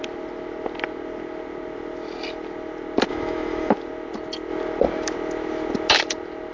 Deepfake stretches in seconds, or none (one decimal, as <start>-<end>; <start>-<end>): 3.1-3.7